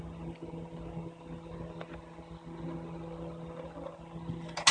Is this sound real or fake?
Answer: real